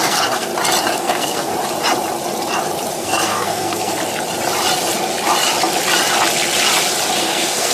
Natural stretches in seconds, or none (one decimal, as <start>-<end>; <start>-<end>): 0.5-1.0; 1.5-2.9; 4.0-7.2